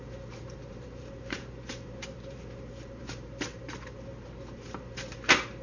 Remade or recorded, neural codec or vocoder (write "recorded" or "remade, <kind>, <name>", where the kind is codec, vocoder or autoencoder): remade, vocoder, BigVGAN v2